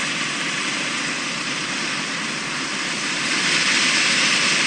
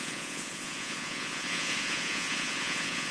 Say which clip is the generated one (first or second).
second